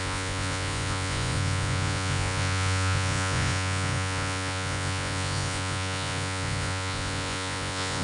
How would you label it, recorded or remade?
remade